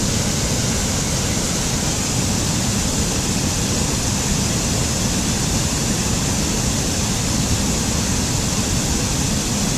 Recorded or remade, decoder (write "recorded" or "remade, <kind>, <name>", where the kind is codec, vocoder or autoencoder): recorded